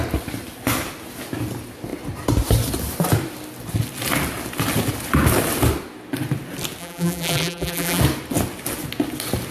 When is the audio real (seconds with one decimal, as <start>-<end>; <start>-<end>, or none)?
0.0-6.8; 8.0-9.5